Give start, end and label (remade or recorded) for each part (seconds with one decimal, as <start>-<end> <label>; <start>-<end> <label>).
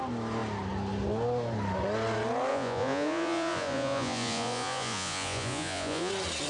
0.0-2.5 recorded; 2.5-6.1 remade; 6.1-6.5 recorded